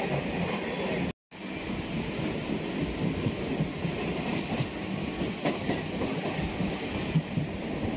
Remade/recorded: recorded